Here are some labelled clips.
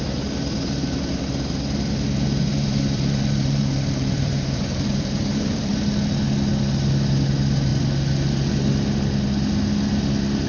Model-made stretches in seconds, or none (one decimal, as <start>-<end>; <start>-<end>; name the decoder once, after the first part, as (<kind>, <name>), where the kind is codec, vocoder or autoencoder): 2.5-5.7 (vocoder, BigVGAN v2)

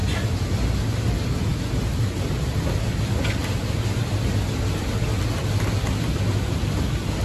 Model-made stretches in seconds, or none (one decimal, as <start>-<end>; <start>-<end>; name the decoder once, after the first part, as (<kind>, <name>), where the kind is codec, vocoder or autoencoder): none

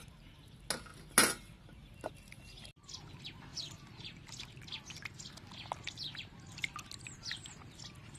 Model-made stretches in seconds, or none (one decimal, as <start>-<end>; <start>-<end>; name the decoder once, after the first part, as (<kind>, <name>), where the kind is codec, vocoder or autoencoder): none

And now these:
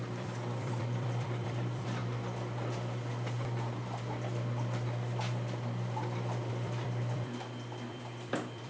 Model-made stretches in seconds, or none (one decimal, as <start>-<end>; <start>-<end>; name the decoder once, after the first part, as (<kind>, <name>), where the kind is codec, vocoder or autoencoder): 0.0-2.0 (vocoder, BigVGAN v2); 6.5-8.7

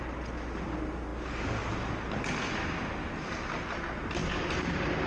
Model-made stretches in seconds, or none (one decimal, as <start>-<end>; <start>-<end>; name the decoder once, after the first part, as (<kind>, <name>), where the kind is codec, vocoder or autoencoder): 4.2-5.1 (vocoder, BigVGAN v2)